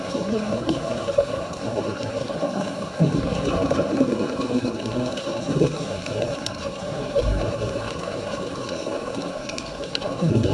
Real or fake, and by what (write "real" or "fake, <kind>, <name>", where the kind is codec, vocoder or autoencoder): fake, codec, SNAC